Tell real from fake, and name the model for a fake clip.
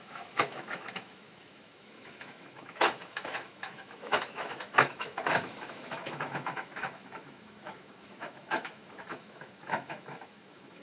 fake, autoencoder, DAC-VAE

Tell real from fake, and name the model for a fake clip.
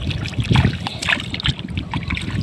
real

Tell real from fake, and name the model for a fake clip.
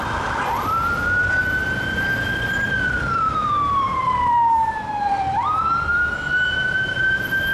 fake, vocoder, BigVGAN v2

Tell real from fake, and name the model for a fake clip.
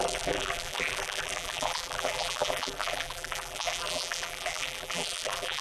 fake, vocoder, BigVGAN v2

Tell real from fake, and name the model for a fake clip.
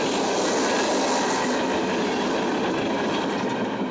real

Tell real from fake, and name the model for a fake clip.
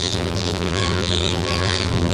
fake, vocoder, BigVGAN v2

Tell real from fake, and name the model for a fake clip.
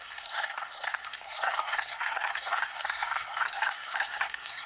fake, codec, SNAC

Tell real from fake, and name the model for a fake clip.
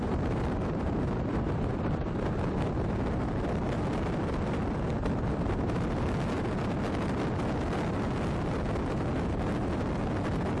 real